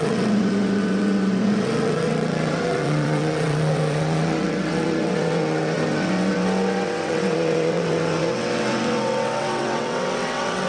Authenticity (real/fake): fake